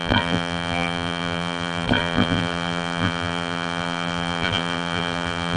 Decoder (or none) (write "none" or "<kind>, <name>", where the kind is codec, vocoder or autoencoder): vocoder, BigVGAN v2